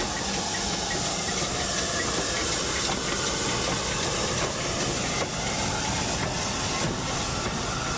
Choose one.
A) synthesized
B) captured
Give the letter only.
B